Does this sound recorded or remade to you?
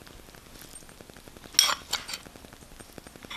recorded